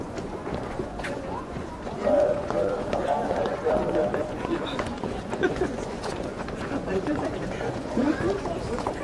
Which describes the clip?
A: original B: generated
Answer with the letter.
B